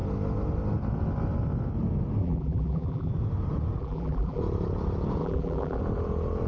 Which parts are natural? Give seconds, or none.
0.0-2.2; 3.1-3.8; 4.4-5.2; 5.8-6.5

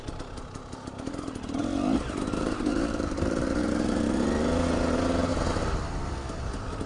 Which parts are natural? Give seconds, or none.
0.0-1.6; 4.0-6.9

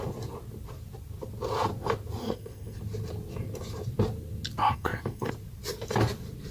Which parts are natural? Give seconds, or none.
0.0-2.2; 2.8-4.6; 5.3-6.5

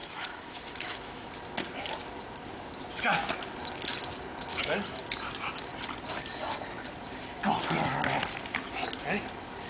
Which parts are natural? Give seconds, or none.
1.3-4.5; 5.0-9.7